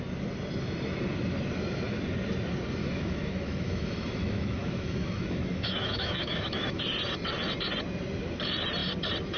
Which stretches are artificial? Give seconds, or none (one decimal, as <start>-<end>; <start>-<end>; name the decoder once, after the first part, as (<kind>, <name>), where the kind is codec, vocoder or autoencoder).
2.8-6.8 (autoencoder, DAC-VAE)